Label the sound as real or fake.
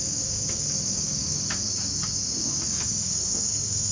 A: fake